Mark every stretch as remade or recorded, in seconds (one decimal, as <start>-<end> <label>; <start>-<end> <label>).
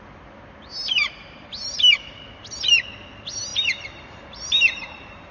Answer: 0.0-0.8 recorded; 0.8-2.2 remade; 2.2-3.5 recorded; 3.5-5.3 remade